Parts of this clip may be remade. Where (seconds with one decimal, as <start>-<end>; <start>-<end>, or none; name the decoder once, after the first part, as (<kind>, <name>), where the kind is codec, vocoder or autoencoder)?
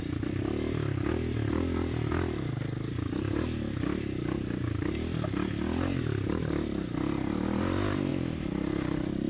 none